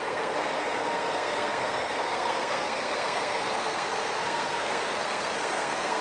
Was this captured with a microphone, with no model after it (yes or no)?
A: no